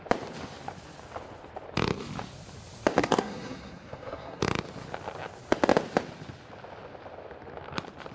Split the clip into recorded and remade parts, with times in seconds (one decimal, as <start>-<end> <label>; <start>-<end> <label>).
0.0-3.0 recorded; 3.0-4.4 remade; 4.4-8.1 recorded